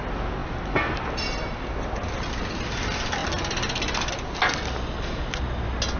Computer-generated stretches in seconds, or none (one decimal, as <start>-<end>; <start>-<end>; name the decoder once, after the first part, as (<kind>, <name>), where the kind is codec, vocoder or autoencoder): none